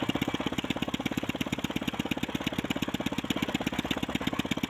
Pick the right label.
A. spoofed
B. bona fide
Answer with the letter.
B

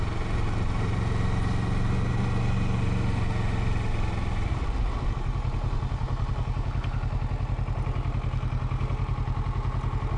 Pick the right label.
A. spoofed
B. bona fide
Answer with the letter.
B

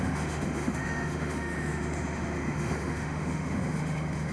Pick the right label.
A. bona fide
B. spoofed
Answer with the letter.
B